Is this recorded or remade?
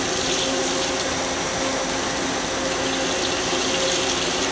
recorded